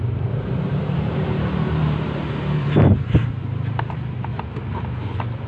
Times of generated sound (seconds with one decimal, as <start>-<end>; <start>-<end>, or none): 0.0-4.3